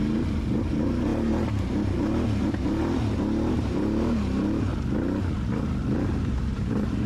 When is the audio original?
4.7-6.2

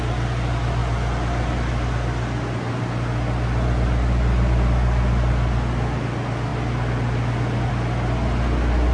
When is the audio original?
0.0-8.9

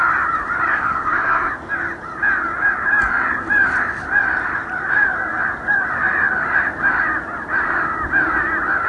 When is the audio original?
0.0-0.7; 1.5-8.9